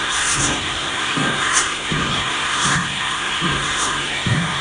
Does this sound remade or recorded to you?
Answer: remade